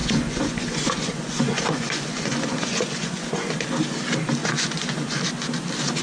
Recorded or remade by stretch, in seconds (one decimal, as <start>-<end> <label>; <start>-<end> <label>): 0.0-3.6 remade; 3.6-4.4 recorded; 4.4-5.2 remade; 5.2-6.0 recorded